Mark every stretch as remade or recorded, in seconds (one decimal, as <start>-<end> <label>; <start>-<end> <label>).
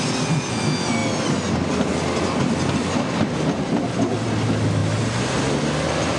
0.0-6.2 recorded